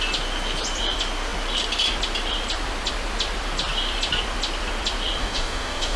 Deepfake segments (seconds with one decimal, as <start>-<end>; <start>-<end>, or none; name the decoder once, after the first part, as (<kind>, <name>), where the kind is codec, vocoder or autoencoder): 5.2-6.0 (codec, DAC)